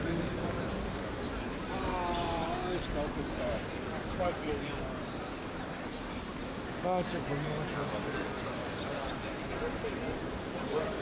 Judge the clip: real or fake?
real